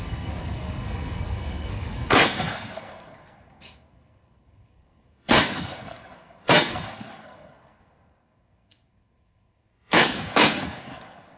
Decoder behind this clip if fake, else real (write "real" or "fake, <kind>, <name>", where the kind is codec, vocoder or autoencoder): fake, codec, SNAC